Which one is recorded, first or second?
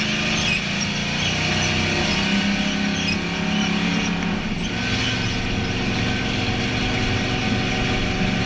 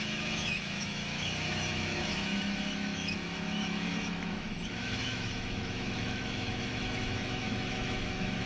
first